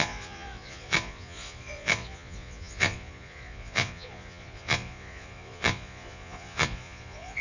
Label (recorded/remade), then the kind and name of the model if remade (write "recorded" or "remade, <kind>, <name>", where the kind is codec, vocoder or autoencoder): remade, vocoder, Vocos